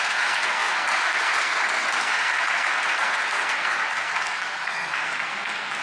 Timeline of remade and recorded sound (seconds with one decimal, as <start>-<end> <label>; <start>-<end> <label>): 0.0-5.8 remade